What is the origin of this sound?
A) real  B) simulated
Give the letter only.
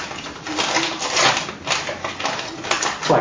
A